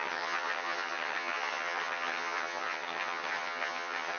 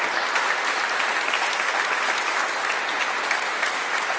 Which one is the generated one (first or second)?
first